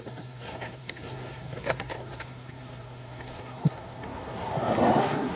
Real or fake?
fake